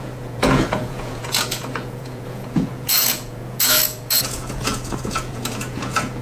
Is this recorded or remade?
remade